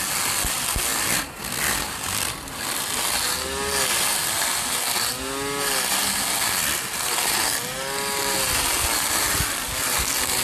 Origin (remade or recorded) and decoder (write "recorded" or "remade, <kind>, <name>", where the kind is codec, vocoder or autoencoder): recorded